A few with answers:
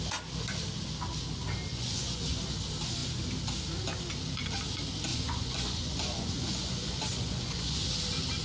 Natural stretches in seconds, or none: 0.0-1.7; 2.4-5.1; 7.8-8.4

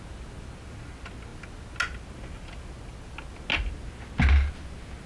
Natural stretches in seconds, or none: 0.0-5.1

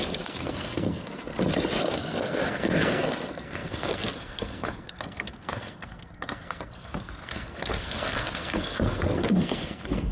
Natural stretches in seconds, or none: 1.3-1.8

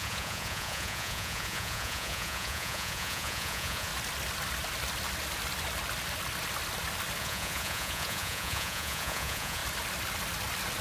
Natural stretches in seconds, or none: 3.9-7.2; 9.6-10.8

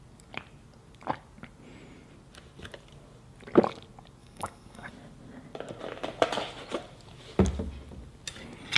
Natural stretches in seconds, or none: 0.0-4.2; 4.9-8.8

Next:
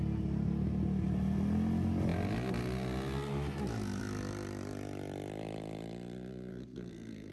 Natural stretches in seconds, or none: 0.0-6.5